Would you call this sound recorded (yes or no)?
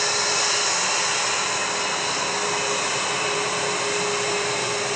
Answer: yes